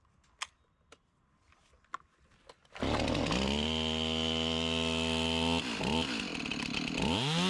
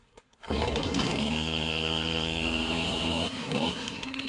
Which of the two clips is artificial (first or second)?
second